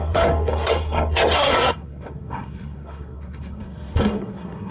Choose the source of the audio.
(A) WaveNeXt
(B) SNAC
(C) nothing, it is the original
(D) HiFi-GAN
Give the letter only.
B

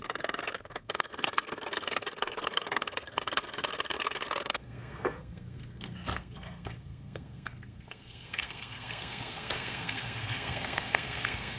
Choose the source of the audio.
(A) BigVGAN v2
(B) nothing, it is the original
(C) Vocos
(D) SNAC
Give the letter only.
D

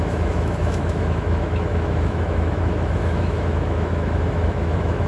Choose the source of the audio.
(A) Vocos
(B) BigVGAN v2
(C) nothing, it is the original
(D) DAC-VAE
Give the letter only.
D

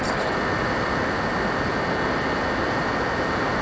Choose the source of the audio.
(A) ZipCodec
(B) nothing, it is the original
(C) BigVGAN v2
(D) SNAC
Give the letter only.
B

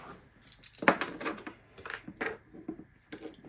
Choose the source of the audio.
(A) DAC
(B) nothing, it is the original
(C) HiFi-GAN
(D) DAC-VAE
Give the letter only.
B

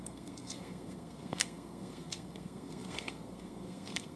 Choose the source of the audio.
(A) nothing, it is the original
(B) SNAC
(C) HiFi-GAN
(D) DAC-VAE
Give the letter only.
B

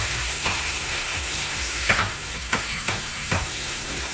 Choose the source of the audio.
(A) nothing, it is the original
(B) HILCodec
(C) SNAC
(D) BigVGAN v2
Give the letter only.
C